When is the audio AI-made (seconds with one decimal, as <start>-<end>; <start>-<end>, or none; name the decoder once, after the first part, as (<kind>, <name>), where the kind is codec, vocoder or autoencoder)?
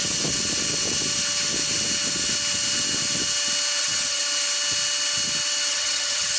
3.8-4.2 (vocoder, HiFi-GAN); 5.7-6.4